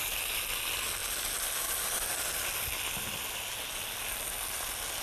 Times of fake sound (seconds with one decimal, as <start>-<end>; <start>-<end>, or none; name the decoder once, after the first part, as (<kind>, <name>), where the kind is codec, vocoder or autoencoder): none